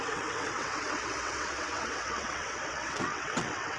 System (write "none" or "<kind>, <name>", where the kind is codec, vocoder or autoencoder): vocoder, WaveNeXt